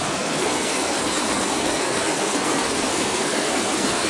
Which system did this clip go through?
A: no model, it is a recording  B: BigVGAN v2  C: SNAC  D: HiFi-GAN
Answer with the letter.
C